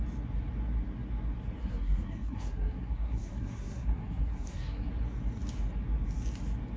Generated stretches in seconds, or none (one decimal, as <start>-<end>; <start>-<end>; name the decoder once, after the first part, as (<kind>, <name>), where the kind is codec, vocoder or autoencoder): 1.6-4.9 (codec, SNAC)